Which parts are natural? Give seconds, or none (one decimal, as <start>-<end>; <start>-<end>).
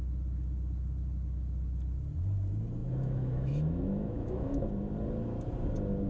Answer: 0.0-2.8; 4.7-6.1